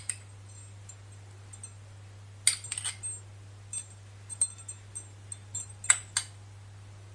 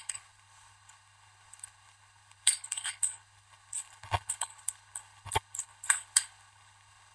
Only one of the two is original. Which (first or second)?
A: first